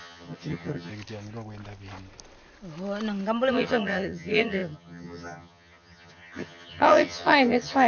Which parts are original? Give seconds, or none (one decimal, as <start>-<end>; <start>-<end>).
0.9-3.5